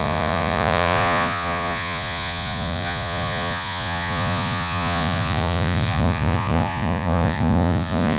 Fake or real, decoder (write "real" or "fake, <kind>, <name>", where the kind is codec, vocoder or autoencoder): fake, vocoder, Vocos